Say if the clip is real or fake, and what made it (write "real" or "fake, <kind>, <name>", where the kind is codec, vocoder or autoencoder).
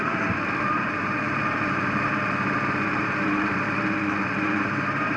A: fake, vocoder, BigVGAN v2